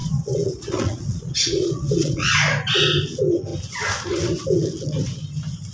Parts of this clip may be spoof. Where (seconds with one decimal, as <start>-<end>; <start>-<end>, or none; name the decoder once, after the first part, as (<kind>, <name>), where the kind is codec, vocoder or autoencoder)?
0.0-2.3 (vocoder, Vocos)